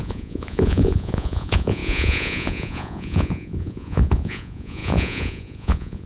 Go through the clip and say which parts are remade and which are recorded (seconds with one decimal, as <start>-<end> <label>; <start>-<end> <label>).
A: 0.0-6.1 remade